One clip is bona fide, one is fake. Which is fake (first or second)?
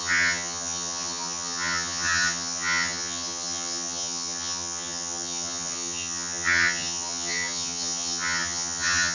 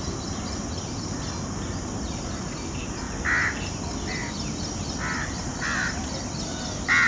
first